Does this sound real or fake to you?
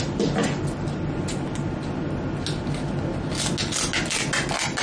real